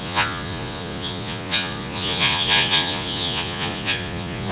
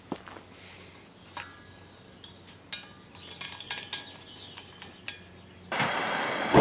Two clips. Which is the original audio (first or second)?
second